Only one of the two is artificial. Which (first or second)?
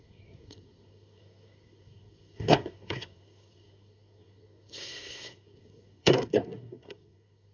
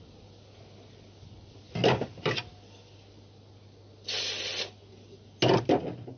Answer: first